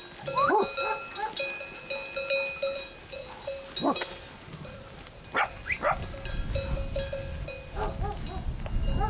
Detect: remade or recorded recorded